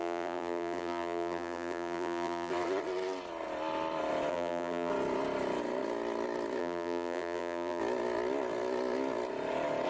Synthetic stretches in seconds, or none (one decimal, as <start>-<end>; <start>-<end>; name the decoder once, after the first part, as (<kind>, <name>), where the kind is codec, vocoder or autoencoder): 0.0-2.5 (vocoder, BigVGAN v2); 4.3-4.9; 6.6-7.8

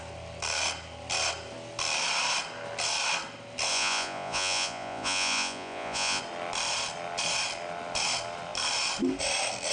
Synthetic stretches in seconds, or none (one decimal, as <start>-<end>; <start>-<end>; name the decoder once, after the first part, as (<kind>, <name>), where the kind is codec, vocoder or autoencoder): 3.7-6.2 (vocoder, Vocos)

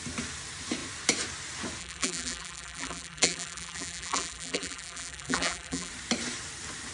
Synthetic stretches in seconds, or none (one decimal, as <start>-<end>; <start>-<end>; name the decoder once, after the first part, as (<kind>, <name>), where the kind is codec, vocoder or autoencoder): 1.8-5.9 (vocoder, BigVGAN v2)